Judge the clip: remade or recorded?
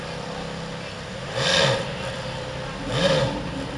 recorded